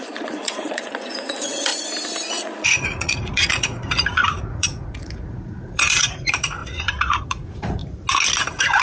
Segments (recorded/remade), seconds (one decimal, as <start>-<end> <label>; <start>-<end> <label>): 0.0-1.7 remade; 1.7-2.3 recorded; 2.3-7.8 remade; 7.8-8.8 recorded